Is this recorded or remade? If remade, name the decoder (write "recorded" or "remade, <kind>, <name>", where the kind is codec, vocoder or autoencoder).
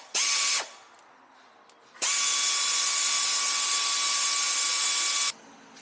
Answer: recorded